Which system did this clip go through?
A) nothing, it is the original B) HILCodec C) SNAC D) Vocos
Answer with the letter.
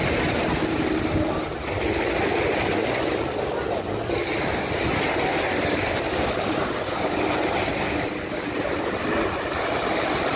A